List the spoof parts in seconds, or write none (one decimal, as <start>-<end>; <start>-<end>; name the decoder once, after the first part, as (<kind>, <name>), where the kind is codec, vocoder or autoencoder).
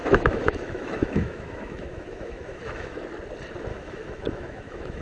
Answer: 0.0-3.0 (autoencoder, DAC-VAE); 3.7-5.0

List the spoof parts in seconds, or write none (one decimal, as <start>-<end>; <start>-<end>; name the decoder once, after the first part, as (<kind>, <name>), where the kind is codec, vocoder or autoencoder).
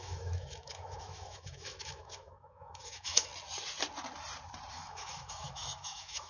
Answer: 0.0-3.3 (autoencoder, DAC-VAE); 4.7-6.3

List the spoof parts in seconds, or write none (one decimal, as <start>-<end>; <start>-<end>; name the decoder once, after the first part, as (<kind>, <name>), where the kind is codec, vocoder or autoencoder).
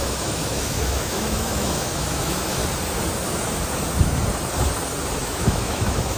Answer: 0.0-2.6 (autoencoder, DAC-VAE); 5.2-6.2